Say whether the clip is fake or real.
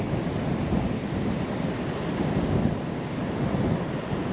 real